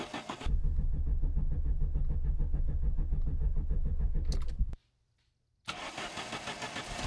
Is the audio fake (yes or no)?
no